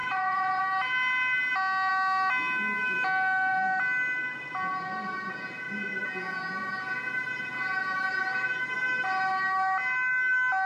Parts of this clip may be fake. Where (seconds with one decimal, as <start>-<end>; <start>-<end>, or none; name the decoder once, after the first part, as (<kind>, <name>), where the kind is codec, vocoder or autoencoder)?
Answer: 0.0-0.6 (vocoder, Vocos)